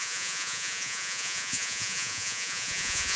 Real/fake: fake